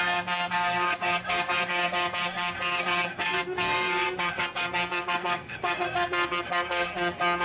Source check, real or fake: fake